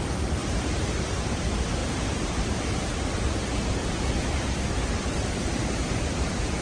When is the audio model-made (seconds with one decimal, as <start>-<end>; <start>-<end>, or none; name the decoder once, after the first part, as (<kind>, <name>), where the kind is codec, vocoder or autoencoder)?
0.0-6.6 (vocoder, BigVGAN v2)